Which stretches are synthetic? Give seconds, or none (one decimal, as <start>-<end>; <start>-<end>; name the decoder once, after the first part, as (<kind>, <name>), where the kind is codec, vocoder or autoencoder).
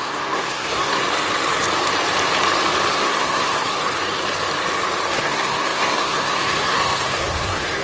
0.0-1.0 (codec, SNAC); 2.9-3.8; 5.1-7.8